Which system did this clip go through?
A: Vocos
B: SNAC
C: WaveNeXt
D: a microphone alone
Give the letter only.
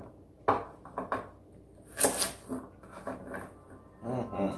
D